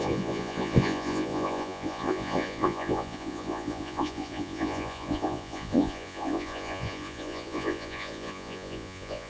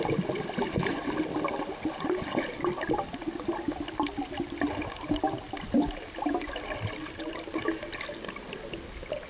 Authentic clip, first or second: second